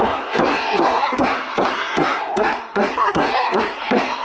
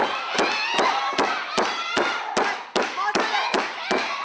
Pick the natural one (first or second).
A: second